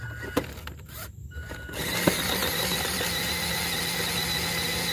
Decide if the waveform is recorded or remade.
recorded